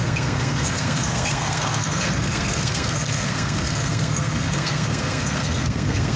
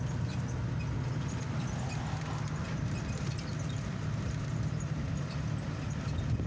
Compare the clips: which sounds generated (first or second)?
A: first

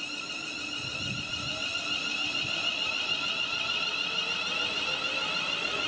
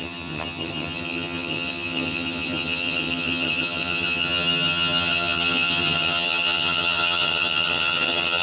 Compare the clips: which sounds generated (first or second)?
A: second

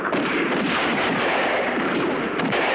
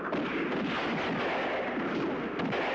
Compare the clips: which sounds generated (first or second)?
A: first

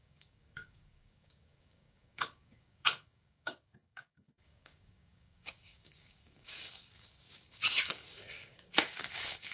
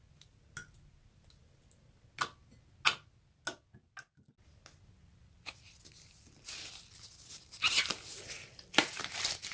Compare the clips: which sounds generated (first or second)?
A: first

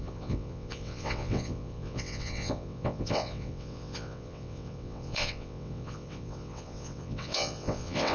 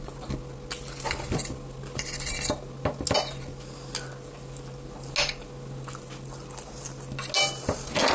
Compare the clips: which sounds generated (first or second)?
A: first